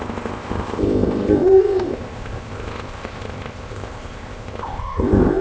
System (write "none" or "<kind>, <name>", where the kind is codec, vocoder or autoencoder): codec, ZipCodec